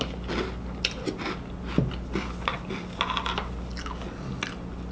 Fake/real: real